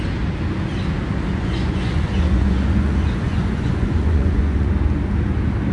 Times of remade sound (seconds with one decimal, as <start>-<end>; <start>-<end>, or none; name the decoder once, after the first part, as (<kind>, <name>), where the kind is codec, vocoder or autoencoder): 1.3-4.7 (vocoder, Vocos)